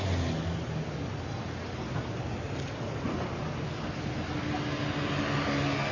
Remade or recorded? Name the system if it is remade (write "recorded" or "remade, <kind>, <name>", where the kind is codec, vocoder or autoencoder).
recorded